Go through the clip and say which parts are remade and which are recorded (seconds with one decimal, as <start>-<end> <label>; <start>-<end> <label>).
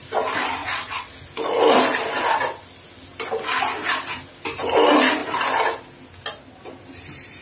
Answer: 0.0-0.6 recorded; 0.6-1.1 remade; 1.1-7.4 recorded